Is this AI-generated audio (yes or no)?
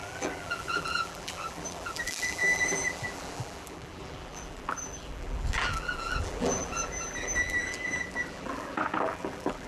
yes